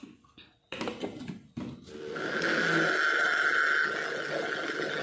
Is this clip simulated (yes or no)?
no